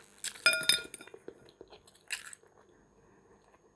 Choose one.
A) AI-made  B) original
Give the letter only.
B